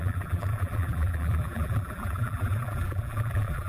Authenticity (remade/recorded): remade